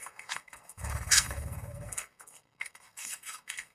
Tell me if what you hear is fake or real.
fake